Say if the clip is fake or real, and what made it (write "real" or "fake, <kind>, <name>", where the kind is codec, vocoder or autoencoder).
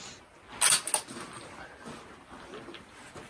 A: real